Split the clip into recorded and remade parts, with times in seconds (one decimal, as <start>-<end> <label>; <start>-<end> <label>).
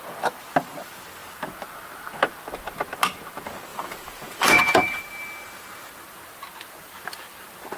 0.0-3.7 recorded; 3.7-5.0 remade; 5.0-7.8 recorded